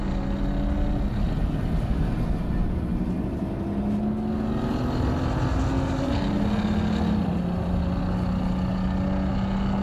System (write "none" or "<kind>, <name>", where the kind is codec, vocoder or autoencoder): none